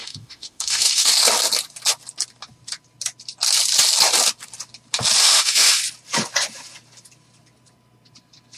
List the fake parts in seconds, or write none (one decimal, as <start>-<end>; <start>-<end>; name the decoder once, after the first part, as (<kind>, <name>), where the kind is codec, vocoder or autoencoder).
0.0-1.1 (autoencoder, DAC-VAE); 5.2-5.8